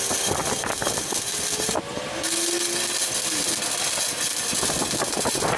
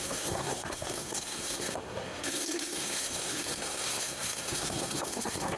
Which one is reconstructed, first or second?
second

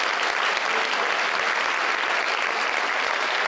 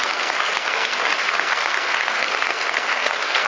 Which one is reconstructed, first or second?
second